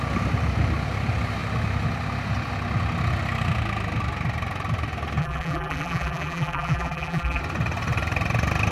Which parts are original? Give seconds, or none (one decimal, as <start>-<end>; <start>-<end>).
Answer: 0.0-5.2; 7.4-8.7